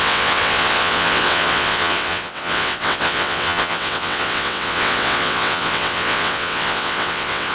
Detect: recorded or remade remade